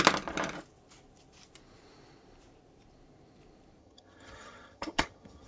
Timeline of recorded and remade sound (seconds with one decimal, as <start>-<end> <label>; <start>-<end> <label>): 0.0-3.8 recorded; 3.8-5.5 remade